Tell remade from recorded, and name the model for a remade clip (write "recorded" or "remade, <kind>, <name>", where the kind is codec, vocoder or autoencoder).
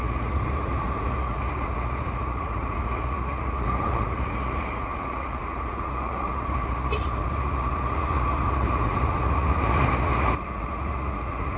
remade, vocoder, Vocos